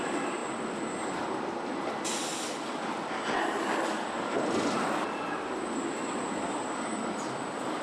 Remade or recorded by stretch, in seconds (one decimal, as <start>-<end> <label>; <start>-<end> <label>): 0.0-7.8 recorded